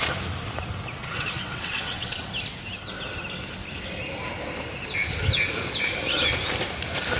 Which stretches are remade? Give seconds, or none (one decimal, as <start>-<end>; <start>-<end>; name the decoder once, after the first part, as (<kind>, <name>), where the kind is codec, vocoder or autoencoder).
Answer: 1.0-2.3 (vocoder, WaveNeXt)